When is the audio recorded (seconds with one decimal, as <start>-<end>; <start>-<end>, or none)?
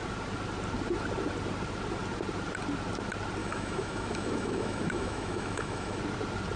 0.0-3.4; 6.0-6.6